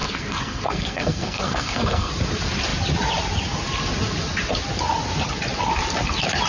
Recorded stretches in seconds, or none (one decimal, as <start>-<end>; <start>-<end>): 2.1-6.5

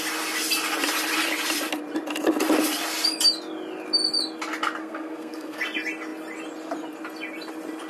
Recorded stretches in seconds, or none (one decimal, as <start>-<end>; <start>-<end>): 0.0-4.8; 5.6-7.9

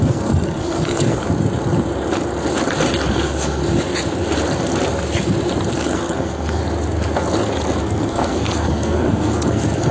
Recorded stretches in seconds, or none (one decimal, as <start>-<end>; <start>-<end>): 1.2-3.1; 3.6-5.8; 6.6-7.8

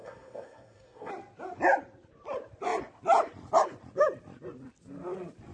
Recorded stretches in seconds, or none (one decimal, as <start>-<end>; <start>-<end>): 1.1-5.5

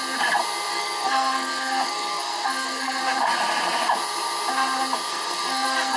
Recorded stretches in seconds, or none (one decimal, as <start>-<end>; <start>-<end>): 0.0-0.7; 3.0-5.1

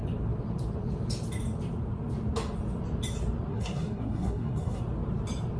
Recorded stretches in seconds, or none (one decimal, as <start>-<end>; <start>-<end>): 0.0-3.5; 4.8-5.6

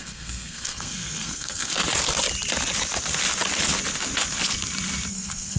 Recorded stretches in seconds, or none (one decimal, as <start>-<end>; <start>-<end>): 1.7-5.1